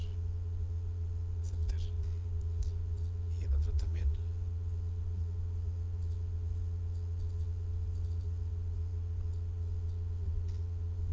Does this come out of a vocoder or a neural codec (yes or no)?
yes